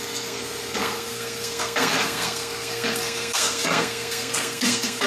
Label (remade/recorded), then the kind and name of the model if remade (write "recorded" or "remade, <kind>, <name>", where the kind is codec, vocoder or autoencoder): remade, codec, SNAC